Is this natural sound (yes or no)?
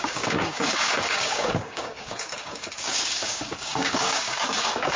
no